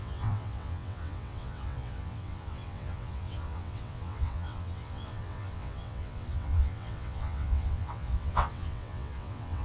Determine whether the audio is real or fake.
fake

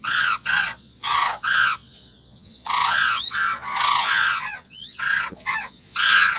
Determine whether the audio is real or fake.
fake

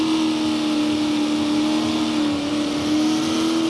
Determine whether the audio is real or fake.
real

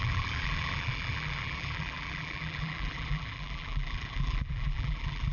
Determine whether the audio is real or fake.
fake